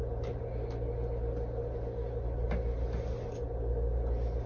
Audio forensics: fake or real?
real